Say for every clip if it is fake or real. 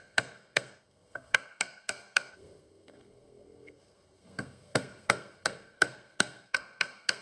fake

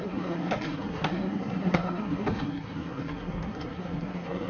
fake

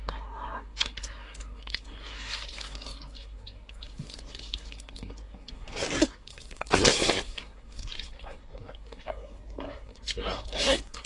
fake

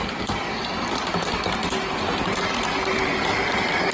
real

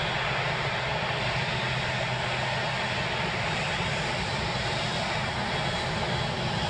real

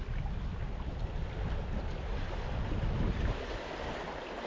real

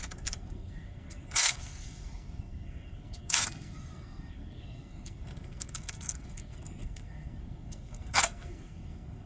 fake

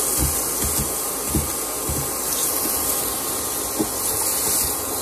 real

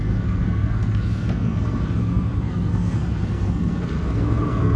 fake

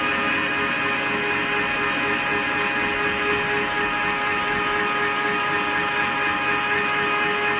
real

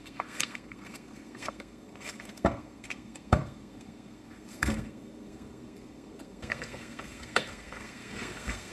fake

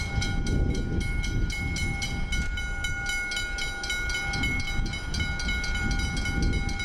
real